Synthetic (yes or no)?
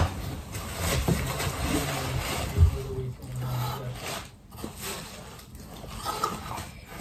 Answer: no